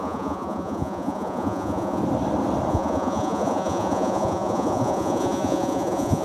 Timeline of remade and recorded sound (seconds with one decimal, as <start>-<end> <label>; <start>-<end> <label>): 0.0-2.0 remade; 2.0-2.7 recorded; 2.7-6.2 remade